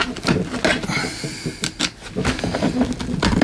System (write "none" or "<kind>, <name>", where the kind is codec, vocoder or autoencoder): none